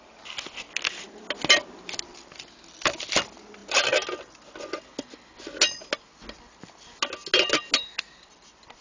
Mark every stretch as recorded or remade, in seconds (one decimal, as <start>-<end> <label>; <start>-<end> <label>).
0.0-8.8 recorded